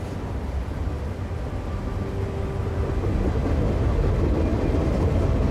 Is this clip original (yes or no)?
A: yes